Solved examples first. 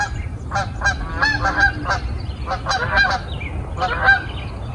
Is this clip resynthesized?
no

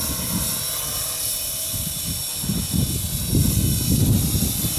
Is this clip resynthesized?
no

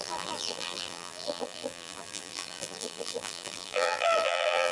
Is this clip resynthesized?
yes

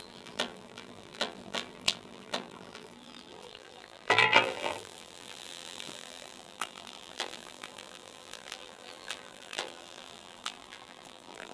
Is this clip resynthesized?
yes